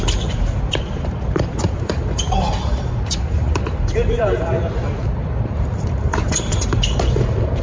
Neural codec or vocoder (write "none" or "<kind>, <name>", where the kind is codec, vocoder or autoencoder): vocoder, BigVGAN v2